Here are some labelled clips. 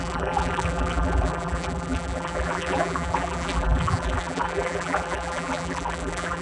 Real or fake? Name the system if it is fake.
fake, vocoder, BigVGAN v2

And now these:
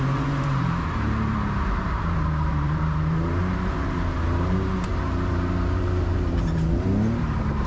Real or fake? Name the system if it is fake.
fake, vocoder, BigVGAN v2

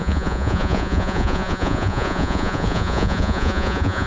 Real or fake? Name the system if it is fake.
fake, vocoder, Vocos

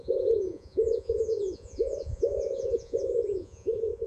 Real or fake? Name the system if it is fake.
fake, vocoder, Vocos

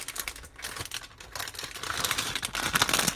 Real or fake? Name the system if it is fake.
real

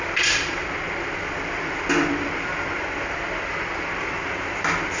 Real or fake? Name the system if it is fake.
fake, vocoder, BigVGAN v2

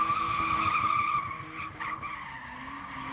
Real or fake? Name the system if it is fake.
real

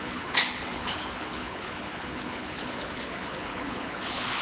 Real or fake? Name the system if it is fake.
fake, codec, HILCodec